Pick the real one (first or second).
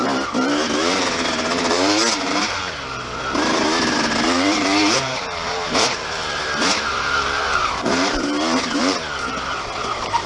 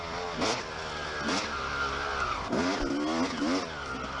second